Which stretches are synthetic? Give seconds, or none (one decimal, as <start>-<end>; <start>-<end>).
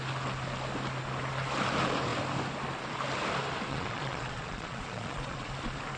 3.7-5.5